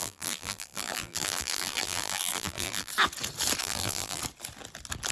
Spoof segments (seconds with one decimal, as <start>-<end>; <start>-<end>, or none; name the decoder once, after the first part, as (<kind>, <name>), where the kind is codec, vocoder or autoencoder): 0.0-2.9 (vocoder, BigVGAN v2); 3.6-4.2